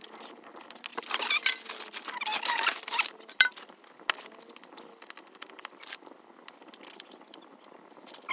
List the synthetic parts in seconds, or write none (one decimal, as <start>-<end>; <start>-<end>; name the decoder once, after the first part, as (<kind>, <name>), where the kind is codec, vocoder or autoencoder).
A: none